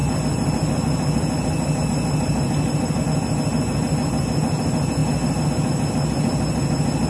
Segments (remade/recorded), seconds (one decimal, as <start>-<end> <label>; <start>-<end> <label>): 0.0-7.1 recorded